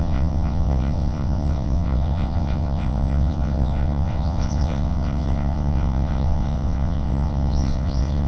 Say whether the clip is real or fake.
fake